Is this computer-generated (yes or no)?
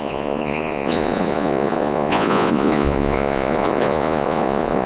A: yes